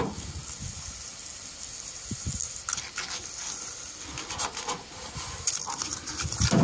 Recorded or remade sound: recorded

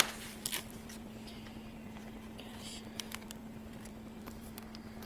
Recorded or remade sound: remade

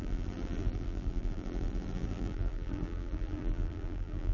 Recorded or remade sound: remade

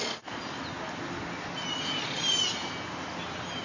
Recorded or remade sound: recorded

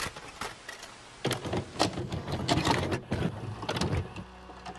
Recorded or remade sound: recorded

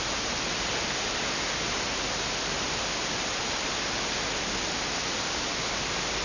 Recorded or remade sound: recorded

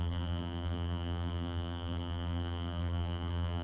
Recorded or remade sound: remade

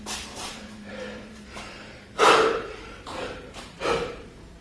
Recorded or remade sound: remade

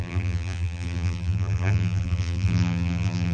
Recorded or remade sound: remade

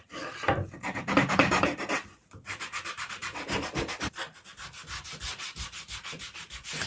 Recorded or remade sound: remade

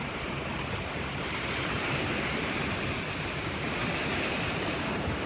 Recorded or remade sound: remade